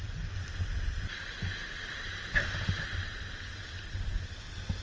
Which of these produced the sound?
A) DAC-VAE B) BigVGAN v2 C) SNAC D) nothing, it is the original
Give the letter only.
D